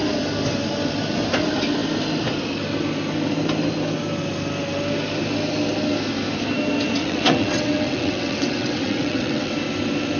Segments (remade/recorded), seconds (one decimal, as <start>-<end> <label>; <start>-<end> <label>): 0.0-7.0 recorded; 7.0-9.5 remade; 9.5-10.2 recorded